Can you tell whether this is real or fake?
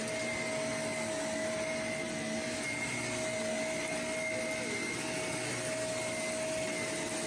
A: real